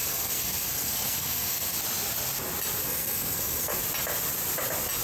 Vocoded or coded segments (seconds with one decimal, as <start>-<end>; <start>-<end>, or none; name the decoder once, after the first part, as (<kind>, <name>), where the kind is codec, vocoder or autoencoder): 0.0-1.8 (codec, SNAC); 2.8-3.8